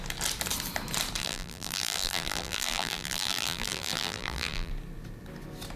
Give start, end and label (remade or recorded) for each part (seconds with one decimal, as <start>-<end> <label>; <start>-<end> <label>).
0.0-1.2 recorded; 1.2-4.7 remade; 4.7-5.8 recorded